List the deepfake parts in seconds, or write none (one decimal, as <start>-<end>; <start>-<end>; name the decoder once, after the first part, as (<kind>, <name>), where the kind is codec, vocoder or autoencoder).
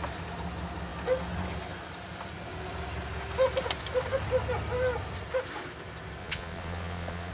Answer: 6.2-7.3 (vocoder, Vocos)